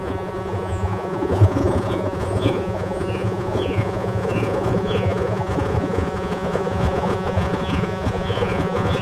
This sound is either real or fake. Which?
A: fake